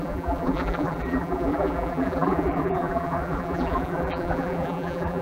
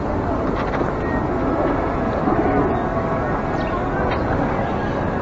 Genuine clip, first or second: second